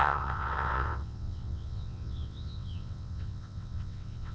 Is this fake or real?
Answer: fake